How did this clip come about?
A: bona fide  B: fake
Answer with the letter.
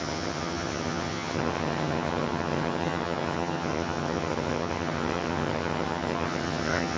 B